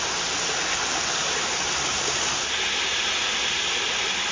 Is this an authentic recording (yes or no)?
yes